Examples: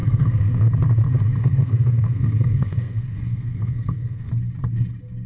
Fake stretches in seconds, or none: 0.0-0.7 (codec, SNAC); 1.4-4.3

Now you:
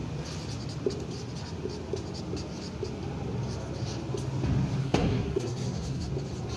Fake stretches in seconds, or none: 4.8-6.1 (codec, SNAC)

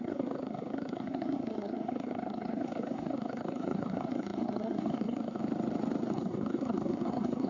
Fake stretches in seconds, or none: 0.0-5.4 (codec, SNAC); 6.1-7.5